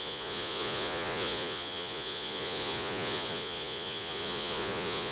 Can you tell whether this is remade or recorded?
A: remade